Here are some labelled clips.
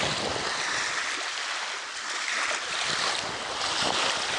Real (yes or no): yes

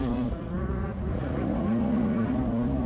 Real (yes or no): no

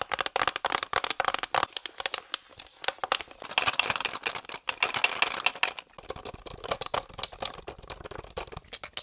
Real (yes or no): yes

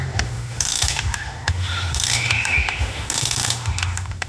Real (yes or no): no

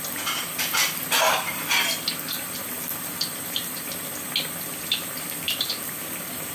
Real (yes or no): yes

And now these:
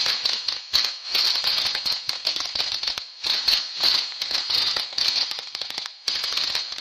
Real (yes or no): no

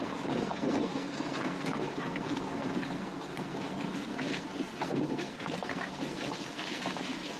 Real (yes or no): no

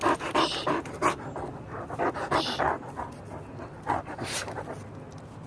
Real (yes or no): yes